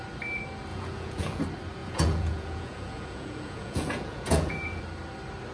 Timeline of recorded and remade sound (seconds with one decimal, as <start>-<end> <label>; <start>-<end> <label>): 0.0-0.7 recorded; 0.7-1.4 remade; 1.4-1.8 recorded; 1.8-4.8 remade; 4.8-5.5 recorded